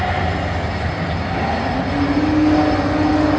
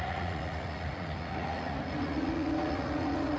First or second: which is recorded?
first